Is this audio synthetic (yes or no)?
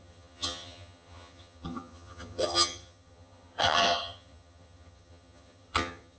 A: yes